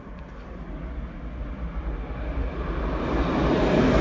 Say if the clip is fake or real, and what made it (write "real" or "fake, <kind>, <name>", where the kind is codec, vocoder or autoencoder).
real